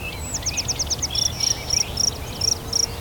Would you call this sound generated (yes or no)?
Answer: no